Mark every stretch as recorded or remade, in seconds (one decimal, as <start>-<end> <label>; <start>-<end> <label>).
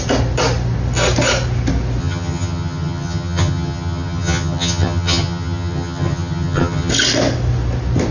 0.0-2.0 recorded; 2.0-6.9 remade; 6.9-8.1 recorded